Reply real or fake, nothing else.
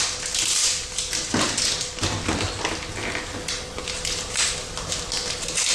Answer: real